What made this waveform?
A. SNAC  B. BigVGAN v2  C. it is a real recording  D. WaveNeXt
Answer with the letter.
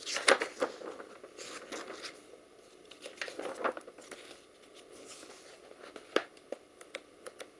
C